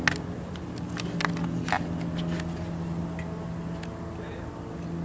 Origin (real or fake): real